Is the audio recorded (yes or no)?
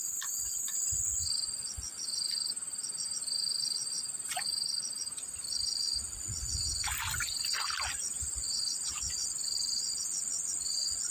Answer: yes